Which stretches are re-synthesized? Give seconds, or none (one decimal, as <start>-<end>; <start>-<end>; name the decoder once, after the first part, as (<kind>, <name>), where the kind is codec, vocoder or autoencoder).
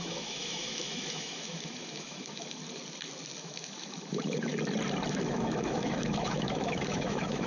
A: 0.0-2.6 (autoencoder, DAC-VAE); 3.4-4.5; 5.1-7.5